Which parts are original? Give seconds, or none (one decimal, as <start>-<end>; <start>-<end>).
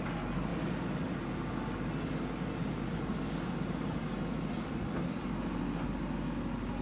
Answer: 0.0-6.8